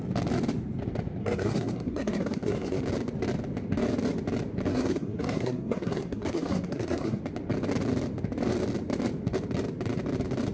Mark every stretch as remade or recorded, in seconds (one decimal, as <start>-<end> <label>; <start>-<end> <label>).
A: 0.0-1.2 recorded; 1.2-2.8 remade; 2.8-4.7 recorded; 4.7-7.2 remade; 7.2-10.5 recorded